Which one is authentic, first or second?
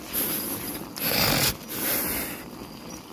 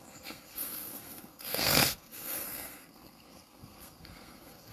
first